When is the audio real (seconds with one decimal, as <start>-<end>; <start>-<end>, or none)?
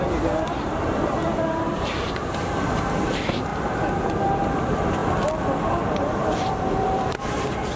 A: 3.5-4.4; 5.0-5.7